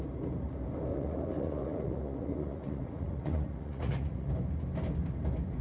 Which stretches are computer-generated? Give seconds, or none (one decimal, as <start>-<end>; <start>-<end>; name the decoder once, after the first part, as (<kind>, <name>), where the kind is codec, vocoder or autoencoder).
0.9-4.3 (vocoder, Vocos)